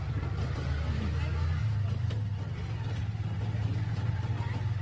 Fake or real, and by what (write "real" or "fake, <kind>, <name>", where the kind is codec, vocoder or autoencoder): real